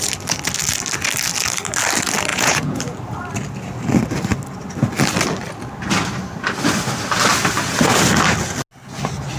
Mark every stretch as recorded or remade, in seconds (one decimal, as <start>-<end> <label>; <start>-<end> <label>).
0.0-2.3 recorded; 2.3-2.8 remade; 2.8-9.4 recorded

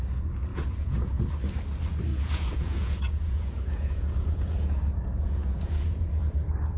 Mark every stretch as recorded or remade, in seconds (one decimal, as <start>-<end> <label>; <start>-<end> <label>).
0.0-0.5 recorded; 0.5-1.2 remade; 1.2-2.1 recorded; 2.1-6.2 remade; 6.2-6.8 recorded

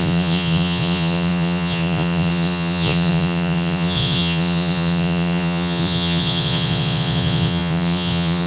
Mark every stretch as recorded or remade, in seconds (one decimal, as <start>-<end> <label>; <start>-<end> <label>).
0.0-8.5 remade

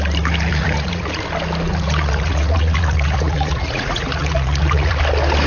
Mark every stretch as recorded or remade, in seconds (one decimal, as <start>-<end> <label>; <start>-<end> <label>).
0.0-0.5 recorded; 0.5-1.2 remade; 1.2-1.7 recorded; 1.7-5.0 remade; 5.0-5.5 recorded

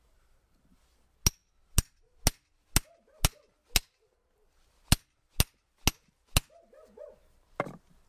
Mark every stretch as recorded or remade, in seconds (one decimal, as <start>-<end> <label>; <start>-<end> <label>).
0.0-8.1 recorded

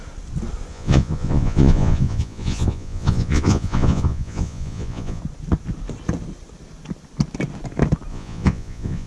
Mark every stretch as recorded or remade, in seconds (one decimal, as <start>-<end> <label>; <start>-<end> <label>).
0.0-0.7 recorded; 0.7-5.2 remade; 5.2-8.1 recorded; 8.1-9.1 remade

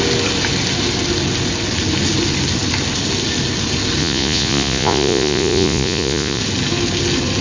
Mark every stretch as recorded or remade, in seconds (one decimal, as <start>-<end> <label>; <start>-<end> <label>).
0.0-4.0 recorded; 4.0-6.4 remade; 6.4-7.4 recorded